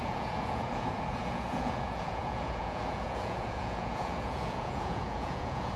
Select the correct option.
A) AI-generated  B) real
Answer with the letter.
A